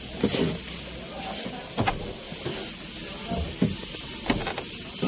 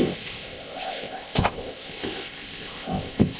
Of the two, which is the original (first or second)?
first